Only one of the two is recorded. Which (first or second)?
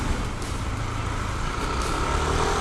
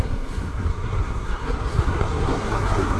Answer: first